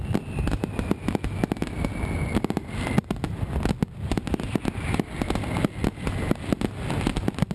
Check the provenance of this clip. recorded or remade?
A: recorded